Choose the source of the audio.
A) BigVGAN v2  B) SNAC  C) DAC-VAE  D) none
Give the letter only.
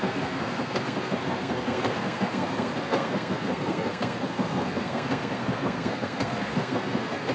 B